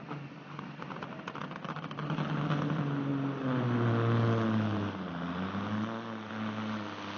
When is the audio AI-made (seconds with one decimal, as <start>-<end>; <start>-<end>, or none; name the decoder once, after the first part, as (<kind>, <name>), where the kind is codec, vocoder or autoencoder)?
1.4-2.3 (codec, DAC)